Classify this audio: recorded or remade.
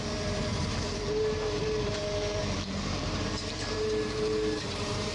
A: remade